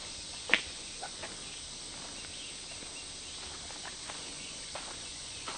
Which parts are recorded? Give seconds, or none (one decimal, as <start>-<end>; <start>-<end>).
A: 1.2-4.0